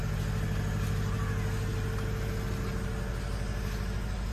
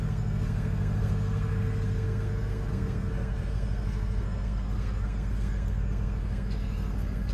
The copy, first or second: second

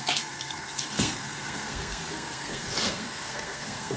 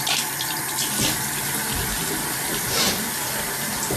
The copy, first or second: first